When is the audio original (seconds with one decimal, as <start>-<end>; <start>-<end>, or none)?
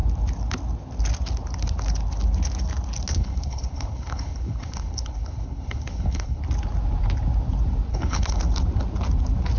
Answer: 0.0-3.1; 6.4-7.9; 8.4-9.6